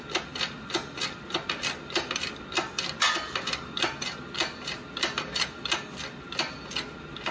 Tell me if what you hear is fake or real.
real